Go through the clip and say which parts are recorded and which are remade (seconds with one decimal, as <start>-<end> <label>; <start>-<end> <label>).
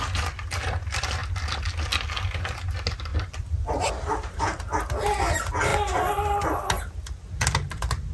0.0-3.1 recorded; 3.1-4.8 remade; 4.8-5.7 recorded; 5.7-6.9 remade; 6.9-8.1 recorded